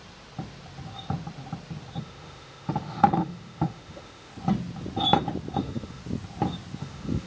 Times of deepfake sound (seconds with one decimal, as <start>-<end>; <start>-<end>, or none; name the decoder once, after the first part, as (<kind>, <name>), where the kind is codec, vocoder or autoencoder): 2.0-4.3 (autoencoder, DAC-VAE); 5.6-6.0; 6.8-7.3

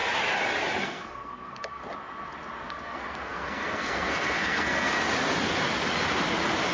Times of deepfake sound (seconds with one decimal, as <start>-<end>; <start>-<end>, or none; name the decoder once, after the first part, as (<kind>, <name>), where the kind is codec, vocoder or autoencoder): 0.8-1.8 (codec, SNAC); 2.7-4.9